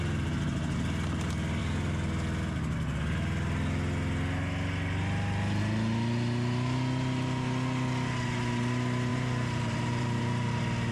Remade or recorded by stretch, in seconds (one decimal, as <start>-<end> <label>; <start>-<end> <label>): 0.0-9.1 recorded; 9.1-10.2 remade; 10.2-10.9 recorded